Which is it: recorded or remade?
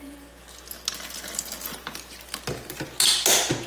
recorded